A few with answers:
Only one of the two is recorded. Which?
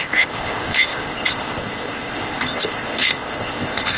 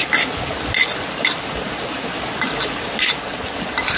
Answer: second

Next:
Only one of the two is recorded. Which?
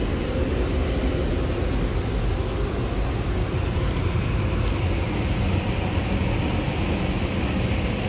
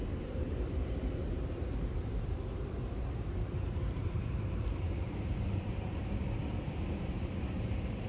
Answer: first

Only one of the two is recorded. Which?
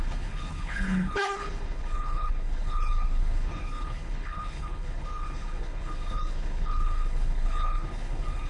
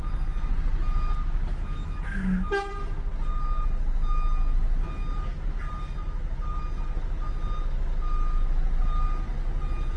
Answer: second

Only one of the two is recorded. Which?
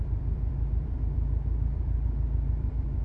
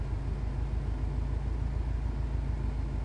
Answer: second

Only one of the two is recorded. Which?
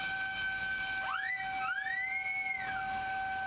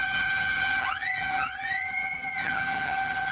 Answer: first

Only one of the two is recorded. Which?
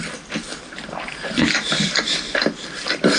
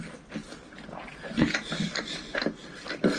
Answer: second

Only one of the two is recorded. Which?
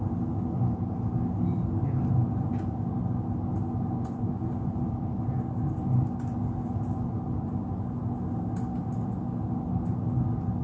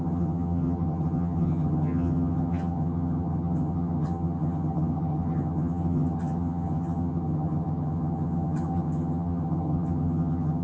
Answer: first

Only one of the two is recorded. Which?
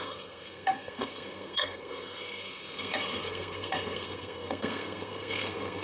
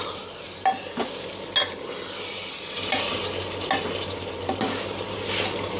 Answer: second